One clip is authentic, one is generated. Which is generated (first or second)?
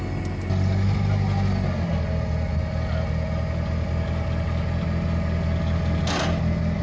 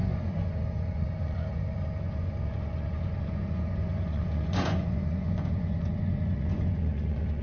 second